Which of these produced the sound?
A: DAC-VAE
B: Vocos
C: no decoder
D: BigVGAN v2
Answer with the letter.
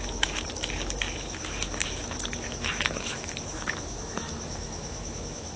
A